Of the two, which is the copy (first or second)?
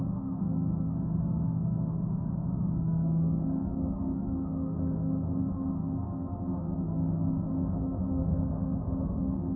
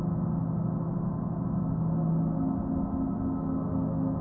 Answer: first